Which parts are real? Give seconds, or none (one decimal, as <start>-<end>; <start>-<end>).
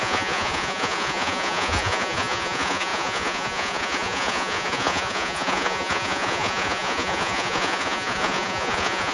none